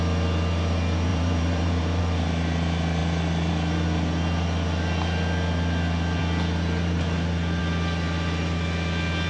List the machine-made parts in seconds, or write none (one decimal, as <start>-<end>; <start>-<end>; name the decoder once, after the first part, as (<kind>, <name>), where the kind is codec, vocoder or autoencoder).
1.1-2.0 (vocoder, BigVGAN v2)